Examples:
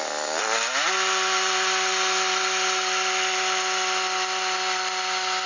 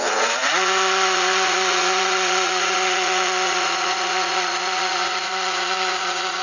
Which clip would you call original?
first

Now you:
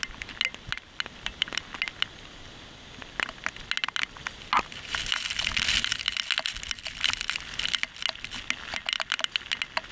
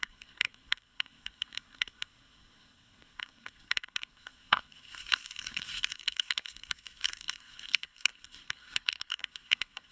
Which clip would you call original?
first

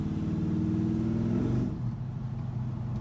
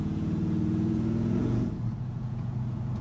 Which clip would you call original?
first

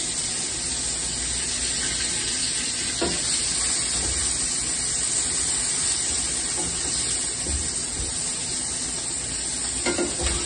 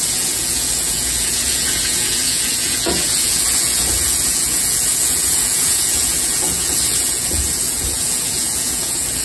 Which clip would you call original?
first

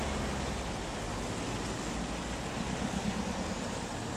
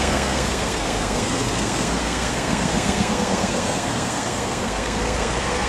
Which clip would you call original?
first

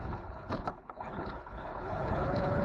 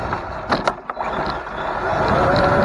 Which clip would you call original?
second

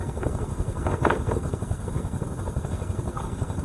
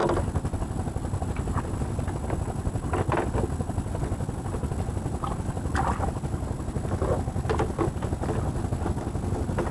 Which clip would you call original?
second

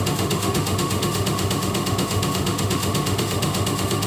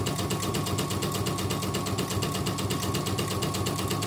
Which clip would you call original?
second